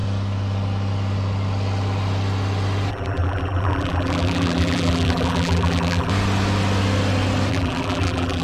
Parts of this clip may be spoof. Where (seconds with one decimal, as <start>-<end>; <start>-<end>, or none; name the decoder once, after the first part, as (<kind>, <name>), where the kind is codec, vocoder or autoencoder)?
2.9-6.1 (vocoder, BigVGAN v2); 7.5-8.4